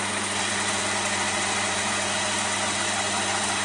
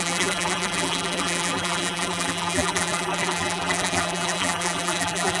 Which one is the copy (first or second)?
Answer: second